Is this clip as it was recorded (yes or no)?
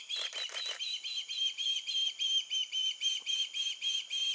yes